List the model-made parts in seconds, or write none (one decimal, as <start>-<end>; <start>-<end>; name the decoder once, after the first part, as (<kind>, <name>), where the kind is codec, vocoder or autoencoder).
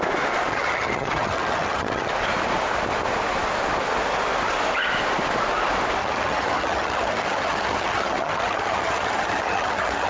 0.5-2.1 (vocoder, HiFi-GAN); 6.0-10.1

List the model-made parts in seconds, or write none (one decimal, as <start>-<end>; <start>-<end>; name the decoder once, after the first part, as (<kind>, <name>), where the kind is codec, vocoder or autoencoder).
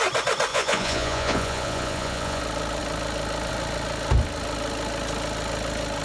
0.5-2.4 (vocoder, Vocos)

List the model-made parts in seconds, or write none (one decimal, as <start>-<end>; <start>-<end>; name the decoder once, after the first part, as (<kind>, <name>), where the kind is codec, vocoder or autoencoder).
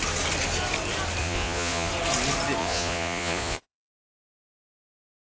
1.2-1.9 (vocoder, Vocos); 2.6-5.4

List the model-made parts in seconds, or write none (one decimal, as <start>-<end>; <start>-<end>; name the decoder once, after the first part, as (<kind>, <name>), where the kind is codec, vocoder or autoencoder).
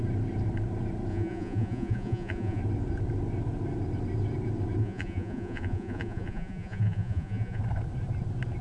1.1-2.6 (vocoder, Vocos); 4.8-7.6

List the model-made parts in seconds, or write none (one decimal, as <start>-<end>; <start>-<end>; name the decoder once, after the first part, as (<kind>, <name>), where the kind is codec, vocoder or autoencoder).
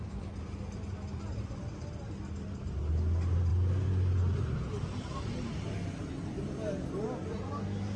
none